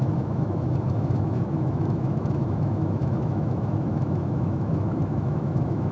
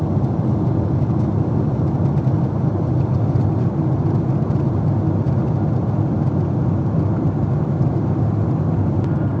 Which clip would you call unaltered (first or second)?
second